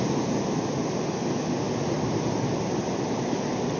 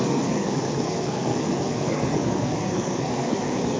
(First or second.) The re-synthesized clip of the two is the second